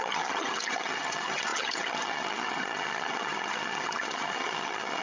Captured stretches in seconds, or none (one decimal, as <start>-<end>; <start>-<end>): none